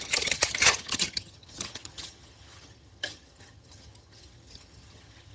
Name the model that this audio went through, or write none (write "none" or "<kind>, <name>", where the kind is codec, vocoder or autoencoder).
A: vocoder, HiFi-GAN